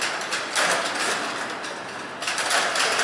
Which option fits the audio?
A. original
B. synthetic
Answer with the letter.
A